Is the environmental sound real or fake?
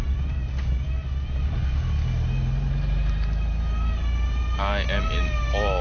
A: real